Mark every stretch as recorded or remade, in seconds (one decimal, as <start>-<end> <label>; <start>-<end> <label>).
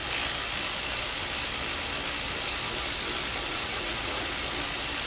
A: 0.0-3.5 recorded; 3.5-4.3 remade; 4.3-5.1 recorded